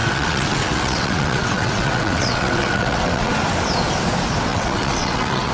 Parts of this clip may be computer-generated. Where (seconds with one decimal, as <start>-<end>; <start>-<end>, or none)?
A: 0.0-3.3; 4.5-5.5